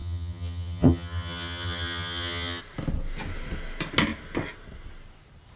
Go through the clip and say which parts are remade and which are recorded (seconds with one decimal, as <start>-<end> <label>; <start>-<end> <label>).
0.0-2.6 remade; 2.6-5.6 recorded